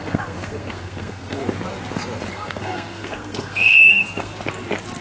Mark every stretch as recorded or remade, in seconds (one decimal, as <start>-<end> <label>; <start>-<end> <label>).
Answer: 0.0-1.4 remade; 1.4-2.3 recorded; 2.3-4.3 remade; 4.3-5.0 recorded